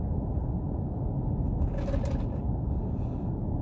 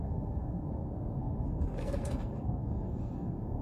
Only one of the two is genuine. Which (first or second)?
first